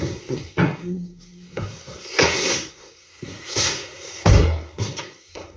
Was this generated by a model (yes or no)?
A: yes